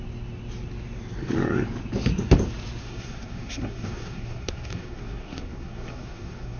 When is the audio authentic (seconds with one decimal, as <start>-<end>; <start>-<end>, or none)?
0.0-2.8